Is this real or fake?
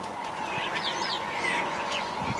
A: fake